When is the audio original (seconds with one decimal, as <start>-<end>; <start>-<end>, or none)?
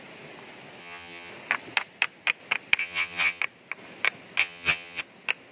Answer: 0.0-0.8; 1.3-2.8; 3.4-4.4; 5.0-5.5